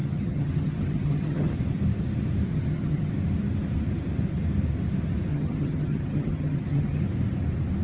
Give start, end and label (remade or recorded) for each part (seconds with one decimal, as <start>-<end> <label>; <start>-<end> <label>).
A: 0.0-1.5 remade; 1.5-2.5 recorded; 2.5-3.1 remade; 3.1-5.3 recorded; 5.3-7.0 remade; 7.0-7.8 recorded